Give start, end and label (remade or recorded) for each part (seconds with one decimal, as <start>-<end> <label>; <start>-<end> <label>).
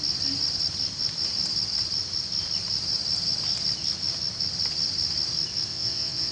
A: 0.0-5.7 recorded; 5.7-6.3 remade